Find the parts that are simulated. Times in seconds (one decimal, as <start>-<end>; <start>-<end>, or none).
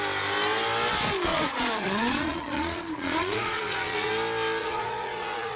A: 1.3-4.1; 4.6-5.6